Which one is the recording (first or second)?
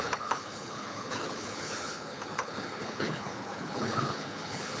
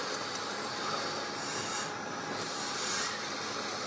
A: second